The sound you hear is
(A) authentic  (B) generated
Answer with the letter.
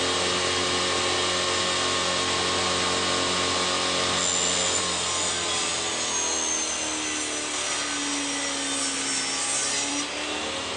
A